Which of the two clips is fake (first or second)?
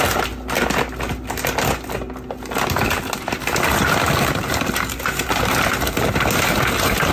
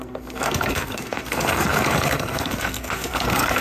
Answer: second